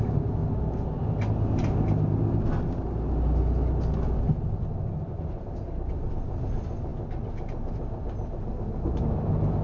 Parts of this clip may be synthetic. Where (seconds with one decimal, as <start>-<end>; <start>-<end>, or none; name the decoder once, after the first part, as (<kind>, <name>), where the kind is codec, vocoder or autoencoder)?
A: none